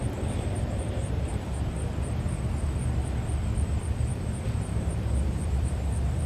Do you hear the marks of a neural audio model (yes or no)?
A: yes